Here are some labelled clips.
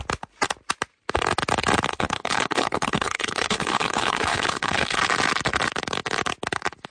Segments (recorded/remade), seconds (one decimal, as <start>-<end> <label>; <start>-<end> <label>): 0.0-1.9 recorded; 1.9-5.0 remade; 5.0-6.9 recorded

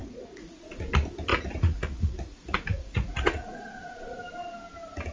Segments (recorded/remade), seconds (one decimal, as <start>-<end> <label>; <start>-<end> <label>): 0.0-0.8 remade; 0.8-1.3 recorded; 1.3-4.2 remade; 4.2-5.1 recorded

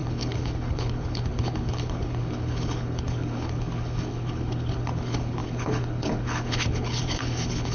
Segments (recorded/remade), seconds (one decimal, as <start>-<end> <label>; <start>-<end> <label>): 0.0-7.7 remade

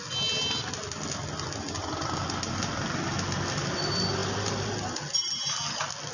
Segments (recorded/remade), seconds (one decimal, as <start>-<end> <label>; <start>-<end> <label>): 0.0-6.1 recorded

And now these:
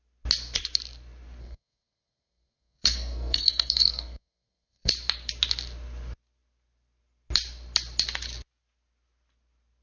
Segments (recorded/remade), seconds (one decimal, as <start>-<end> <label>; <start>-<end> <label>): 0.0-1.4 recorded; 1.4-4.9 remade; 4.9-9.8 recorded